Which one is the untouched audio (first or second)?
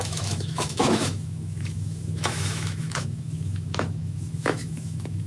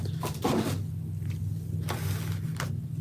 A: second